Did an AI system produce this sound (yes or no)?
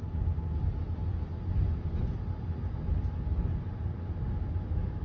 no